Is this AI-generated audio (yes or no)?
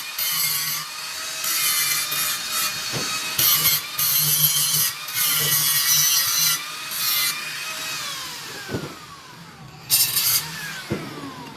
no